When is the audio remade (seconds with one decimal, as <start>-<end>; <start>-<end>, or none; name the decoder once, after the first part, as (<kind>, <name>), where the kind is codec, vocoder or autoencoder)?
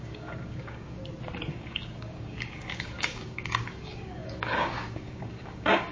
0.0-1.0 (codec, DAC); 1.5-5.9